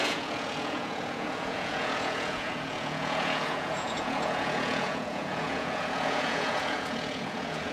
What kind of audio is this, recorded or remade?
remade